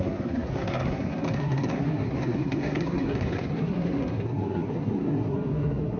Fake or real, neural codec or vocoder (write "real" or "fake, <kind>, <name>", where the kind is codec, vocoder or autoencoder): fake, codec, SNAC